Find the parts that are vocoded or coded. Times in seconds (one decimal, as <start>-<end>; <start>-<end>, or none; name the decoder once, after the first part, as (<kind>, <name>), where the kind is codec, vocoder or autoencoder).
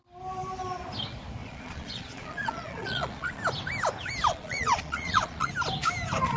1.4-3.4 (vocoder, Vocos); 4.3-5.5